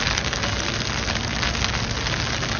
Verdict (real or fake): real